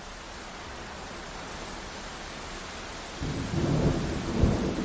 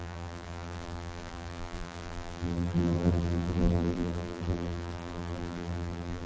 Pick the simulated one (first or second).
second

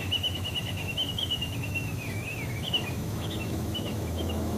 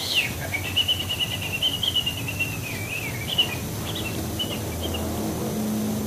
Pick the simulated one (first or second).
first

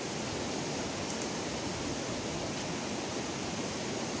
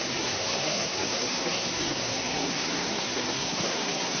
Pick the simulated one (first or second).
second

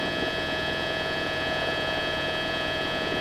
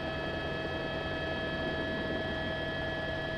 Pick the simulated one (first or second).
first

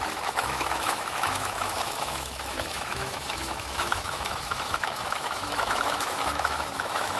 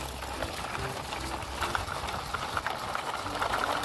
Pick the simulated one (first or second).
first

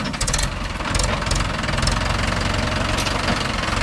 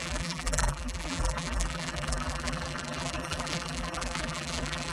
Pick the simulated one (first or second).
second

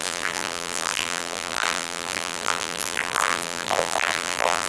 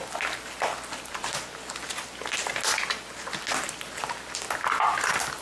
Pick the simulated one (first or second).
first